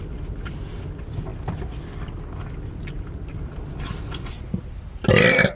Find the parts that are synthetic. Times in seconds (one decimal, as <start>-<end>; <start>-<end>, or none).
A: none